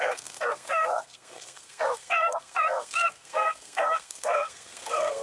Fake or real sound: fake